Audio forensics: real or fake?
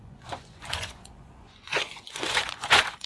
fake